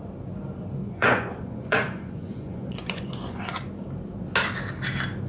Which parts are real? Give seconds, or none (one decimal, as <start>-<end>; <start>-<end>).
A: 0.0-0.8; 3.4-5.3